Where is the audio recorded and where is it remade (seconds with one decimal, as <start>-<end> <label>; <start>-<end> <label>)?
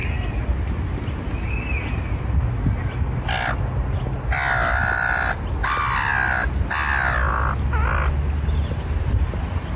0.0-9.8 recorded